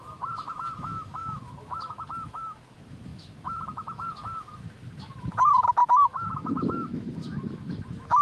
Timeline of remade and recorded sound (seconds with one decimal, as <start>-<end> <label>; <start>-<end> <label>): 0.0-8.2 remade